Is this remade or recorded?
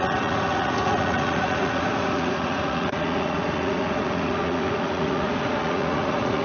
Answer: remade